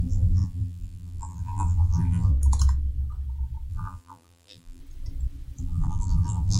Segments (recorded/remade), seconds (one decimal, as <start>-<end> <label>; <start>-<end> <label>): 0.0-2.3 remade; 2.3-3.7 recorded; 3.7-4.8 remade; 4.8-5.6 recorded; 5.6-6.6 remade